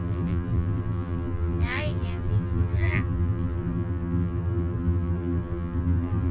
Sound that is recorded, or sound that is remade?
remade